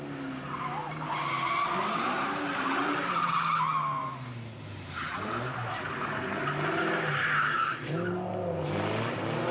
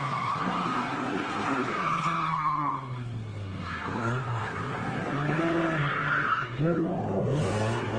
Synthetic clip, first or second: second